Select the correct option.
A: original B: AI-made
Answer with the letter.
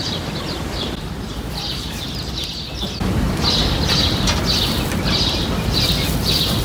A